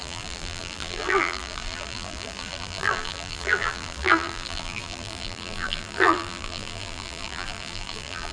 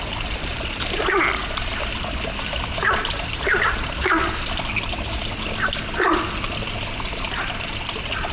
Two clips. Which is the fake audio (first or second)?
first